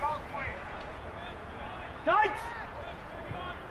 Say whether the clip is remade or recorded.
remade